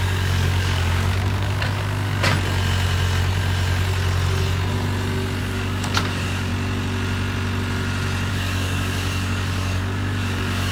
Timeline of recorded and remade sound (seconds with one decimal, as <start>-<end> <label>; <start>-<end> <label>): 0.0-2.3 remade; 2.3-5.4 recorded; 5.4-6.5 remade; 6.5-8.3 recorded; 8.3-10.7 remade